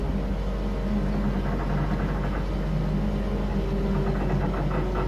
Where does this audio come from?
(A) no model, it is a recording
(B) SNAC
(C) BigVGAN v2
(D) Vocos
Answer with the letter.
A